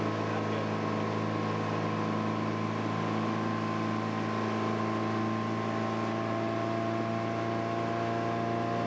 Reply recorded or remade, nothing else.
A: recorded